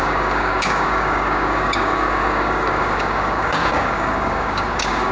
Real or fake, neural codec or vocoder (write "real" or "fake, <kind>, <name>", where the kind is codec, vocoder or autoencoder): fake, codec, DAC